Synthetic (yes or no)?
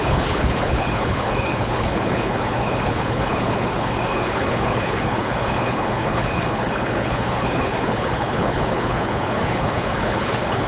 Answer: yes